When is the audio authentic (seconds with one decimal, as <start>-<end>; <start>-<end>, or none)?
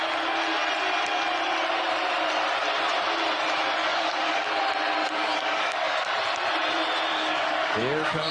0.0-3.8; 4.6-5.0; 6.1-7.1